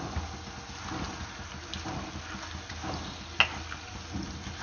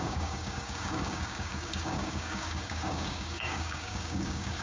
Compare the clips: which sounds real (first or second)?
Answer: first